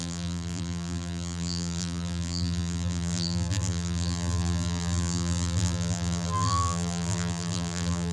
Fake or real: fake